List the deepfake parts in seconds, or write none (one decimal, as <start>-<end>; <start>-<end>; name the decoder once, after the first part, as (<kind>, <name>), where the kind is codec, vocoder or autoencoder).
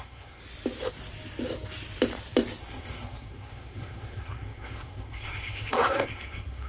0.0-0.4 (codec, SNAC); 2.6-6.7